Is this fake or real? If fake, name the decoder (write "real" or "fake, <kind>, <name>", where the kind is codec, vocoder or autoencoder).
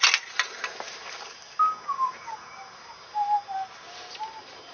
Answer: real